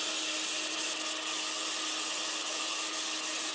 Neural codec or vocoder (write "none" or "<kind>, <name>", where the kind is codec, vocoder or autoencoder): none